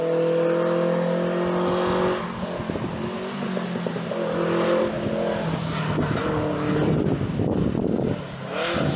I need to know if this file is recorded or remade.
recorded